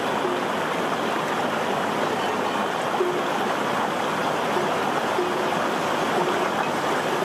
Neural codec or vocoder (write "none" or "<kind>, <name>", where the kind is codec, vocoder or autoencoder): none